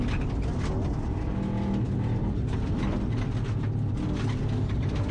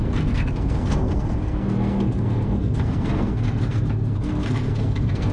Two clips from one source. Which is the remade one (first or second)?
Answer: second